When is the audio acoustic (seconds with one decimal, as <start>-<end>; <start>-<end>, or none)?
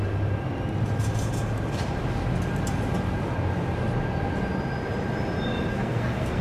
0.0-5.7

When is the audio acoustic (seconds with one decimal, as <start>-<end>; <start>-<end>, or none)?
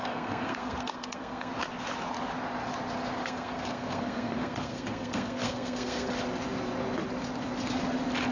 1.5-3.2; 6.1-8.3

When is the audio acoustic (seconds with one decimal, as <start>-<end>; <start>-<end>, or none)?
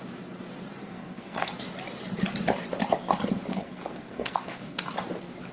0.0-0.8; 1.5-3.5; 4.8-5.5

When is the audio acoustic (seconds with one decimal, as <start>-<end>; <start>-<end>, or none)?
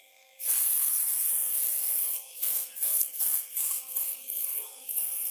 none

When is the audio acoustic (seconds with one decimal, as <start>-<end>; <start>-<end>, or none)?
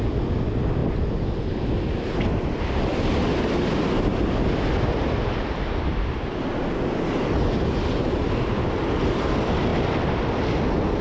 0.0-11.0